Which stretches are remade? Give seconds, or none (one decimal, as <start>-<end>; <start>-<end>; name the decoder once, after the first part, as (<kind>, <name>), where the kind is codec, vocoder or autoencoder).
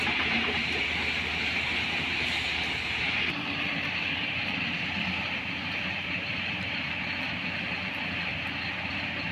0.0-8.3 (vocoder, BigVGAN v2); 8.9-9.3